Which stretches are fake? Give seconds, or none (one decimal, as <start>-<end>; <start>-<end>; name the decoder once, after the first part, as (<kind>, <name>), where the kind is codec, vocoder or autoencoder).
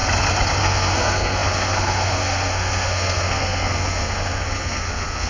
0.6-5.3 (codec, SNAC)